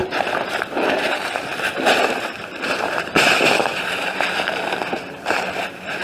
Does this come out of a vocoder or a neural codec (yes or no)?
yes